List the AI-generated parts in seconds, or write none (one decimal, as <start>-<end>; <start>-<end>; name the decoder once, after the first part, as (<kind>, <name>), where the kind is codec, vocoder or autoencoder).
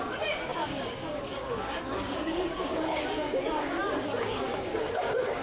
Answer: 0.0-5.4 (codec, DAC)